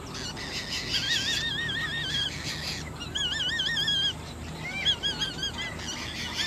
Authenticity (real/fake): real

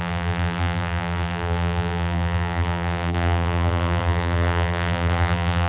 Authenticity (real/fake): fake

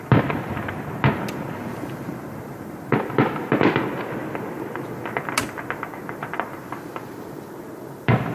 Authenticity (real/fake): real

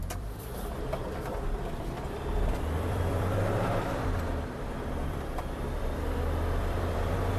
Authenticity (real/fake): fake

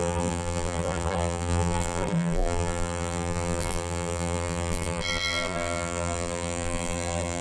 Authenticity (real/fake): fake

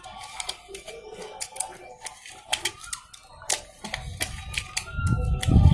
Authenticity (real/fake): real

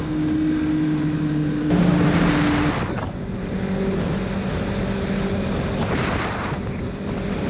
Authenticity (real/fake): real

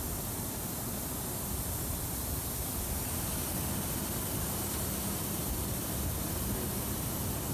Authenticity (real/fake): real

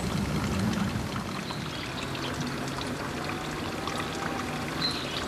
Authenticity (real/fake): real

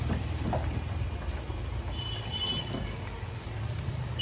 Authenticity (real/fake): fake